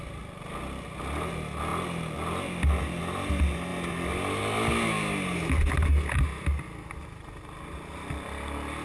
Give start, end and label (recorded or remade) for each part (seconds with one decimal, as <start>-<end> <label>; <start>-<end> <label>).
0.0-8.8 recorded